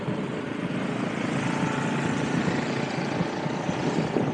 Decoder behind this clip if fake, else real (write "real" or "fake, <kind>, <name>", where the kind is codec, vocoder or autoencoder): real